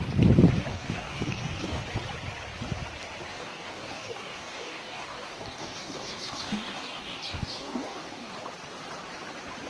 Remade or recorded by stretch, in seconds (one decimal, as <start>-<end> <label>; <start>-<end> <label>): 0.0-0.7 recorded; 0.7-1.8 remade; 1.8-3.3 recorded; 3.3-8.3 remade; 8.3-9.7 recorded